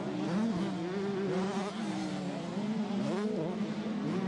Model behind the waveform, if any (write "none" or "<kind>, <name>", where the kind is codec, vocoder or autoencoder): none